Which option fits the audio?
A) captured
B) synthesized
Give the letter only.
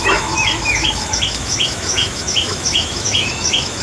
B